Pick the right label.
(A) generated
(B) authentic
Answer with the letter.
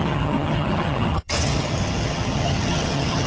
A